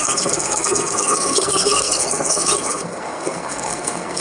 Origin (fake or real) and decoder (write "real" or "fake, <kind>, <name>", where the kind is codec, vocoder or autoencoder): fake, codec, SNAC